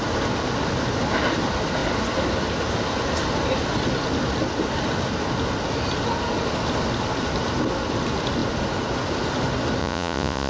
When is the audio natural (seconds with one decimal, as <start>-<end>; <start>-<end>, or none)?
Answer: 0.0-9.8